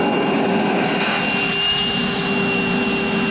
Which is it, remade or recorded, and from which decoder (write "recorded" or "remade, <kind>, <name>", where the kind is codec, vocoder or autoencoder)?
recorded